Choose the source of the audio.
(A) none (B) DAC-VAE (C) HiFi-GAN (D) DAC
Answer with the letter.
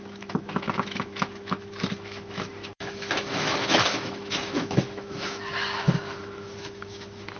B